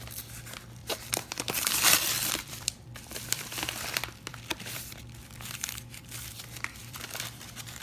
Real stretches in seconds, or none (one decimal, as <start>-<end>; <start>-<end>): 0.0-0.8; 2.9-4.3; 5.0-6.8